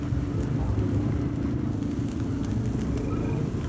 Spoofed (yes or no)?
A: no